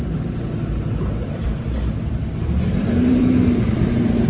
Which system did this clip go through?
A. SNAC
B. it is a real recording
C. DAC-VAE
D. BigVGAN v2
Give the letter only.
D